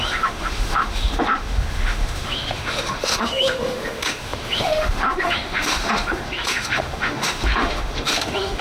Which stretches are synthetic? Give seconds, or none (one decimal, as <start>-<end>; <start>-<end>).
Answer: 0.0-8.6